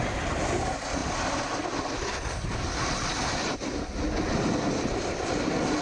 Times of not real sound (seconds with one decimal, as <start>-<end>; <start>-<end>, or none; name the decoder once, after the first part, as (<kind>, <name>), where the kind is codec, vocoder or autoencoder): none